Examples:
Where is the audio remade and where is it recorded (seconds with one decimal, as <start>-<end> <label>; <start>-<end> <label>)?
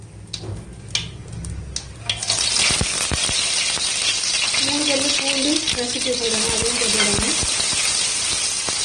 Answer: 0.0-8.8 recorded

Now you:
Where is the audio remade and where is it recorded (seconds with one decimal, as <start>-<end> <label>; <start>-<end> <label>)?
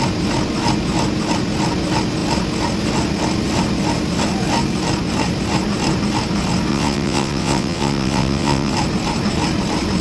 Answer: 0.0-6.7 recorded; 6.7-8.7 remade; 8.7-10.0 recorded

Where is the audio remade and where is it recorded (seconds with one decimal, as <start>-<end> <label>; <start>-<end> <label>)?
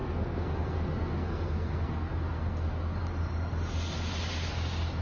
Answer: 0.0-3.0 remade; 3.0-5.0 recorded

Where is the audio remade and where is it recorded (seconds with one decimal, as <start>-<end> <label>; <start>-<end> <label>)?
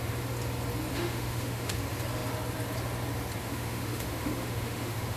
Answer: 0.0-0.9 recorded; 0.9-1.7 remade; 1.7-3.4 recorded; 3.4-5.2 remade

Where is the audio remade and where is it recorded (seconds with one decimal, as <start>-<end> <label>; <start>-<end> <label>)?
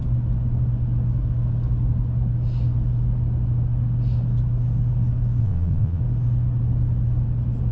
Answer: 0.0-5.4 recorded; 5.4-6.0 remade; 6.0-7.7 recorded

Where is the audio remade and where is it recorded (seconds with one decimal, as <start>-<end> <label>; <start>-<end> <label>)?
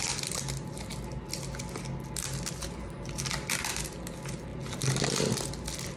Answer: 0.0-6.0 recorded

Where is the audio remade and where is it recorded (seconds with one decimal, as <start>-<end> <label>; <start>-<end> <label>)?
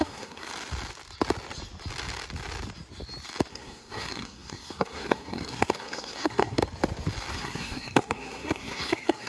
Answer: 0.0-0.5 remade; 0.5-3.5 recorded; 3.5-6.6 remade; 6.6-7.3 recorded; 7.3-9.3 remade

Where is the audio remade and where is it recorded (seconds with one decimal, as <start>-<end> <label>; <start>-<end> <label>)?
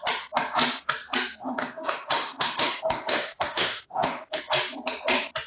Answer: 0.0-1.4 recorded; 1.4-4.4 remade; 4.4-5.5 recorded